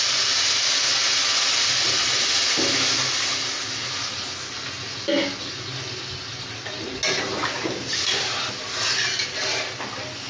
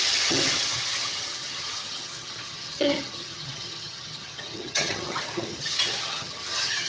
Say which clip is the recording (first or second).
first